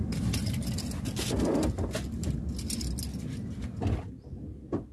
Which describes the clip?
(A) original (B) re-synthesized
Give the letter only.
A